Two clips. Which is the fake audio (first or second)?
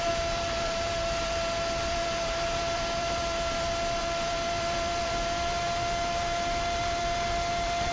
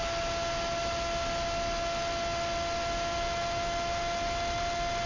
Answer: first